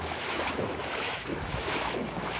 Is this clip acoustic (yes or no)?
no